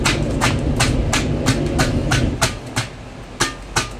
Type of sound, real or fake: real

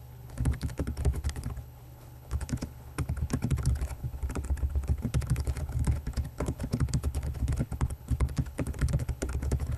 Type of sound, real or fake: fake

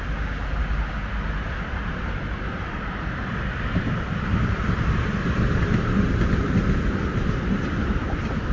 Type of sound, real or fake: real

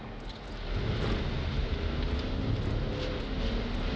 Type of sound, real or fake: real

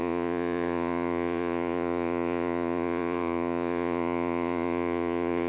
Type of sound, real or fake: fake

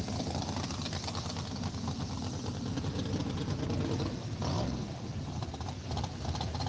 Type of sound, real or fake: real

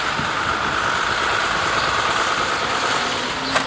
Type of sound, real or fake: real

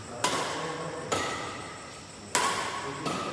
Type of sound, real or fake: real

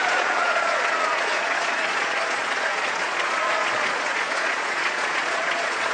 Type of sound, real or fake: fake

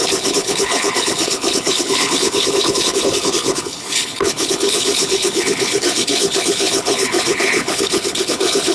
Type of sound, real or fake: fake